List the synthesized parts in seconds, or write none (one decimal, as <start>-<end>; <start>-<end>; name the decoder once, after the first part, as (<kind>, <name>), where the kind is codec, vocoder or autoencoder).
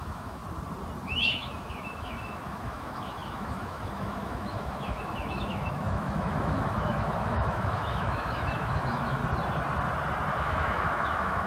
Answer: 0.0-0.4 (autoencoder, DAC-VAE); 1.1-9.2; 10.4-11.5